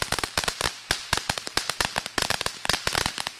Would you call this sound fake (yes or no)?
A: no